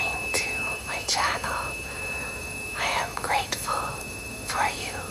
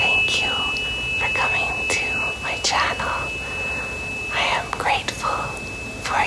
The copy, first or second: first